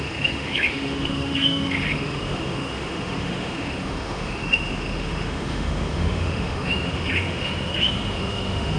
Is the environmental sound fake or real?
fake